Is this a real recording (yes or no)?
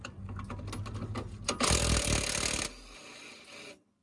yes